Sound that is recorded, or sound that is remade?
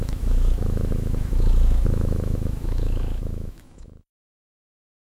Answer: remade